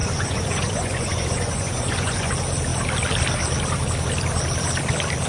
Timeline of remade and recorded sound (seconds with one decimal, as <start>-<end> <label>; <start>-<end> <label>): 0.0-2.3 remade; 2.3-5.3 recorded